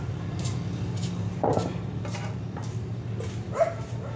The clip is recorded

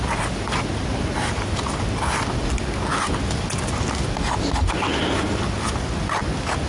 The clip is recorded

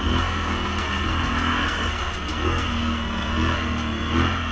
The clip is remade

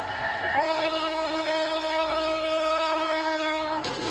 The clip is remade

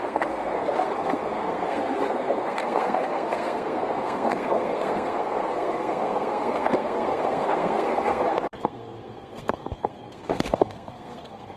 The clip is remade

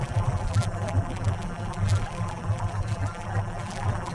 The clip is remade